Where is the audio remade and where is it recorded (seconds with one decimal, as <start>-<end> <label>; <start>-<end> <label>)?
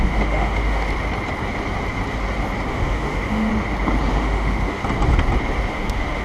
0.0-0.9 remade; 0.9-2.7 recorded; 2.7-3.5 remade; 3.5-4.1 recorded; 4.1-4.8 remade; 4.8-5.7 recorded; 5.7-6.2 remade